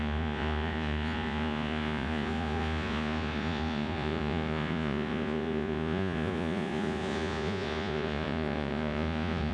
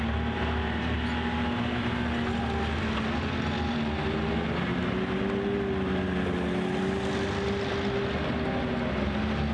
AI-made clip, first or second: first